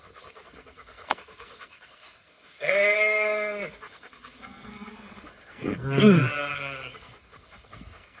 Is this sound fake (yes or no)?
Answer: yes